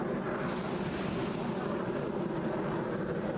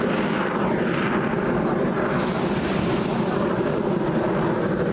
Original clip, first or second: first